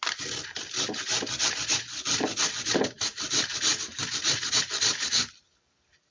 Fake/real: real